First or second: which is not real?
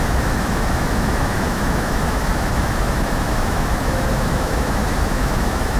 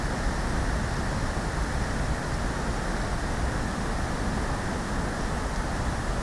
first